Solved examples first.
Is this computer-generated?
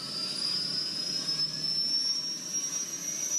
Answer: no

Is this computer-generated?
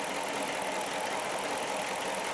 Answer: no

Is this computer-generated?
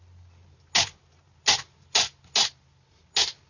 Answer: no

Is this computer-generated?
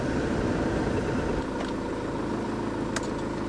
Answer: no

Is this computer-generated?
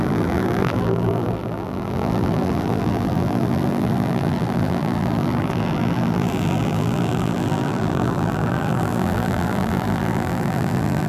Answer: yes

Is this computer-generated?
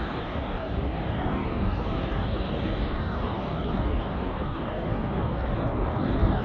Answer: yes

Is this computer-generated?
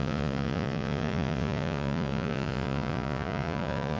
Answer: yes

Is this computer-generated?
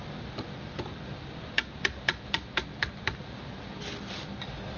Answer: no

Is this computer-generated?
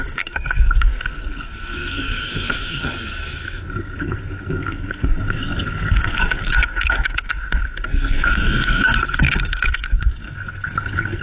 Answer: yes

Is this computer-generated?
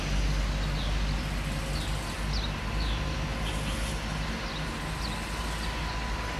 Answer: no